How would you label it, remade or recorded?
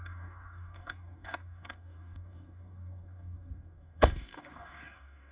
remade